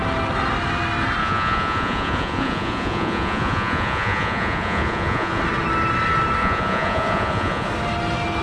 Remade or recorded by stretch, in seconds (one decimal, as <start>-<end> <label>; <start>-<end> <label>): 0.0-1.2 recorded; 1.2-5.4 remade; 5.4-6.4 recorded; 6.4-7.7 remade; 7.7-8.4 recorded